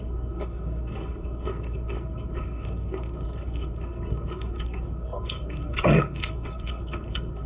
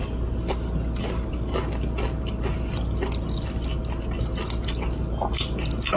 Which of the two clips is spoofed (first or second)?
first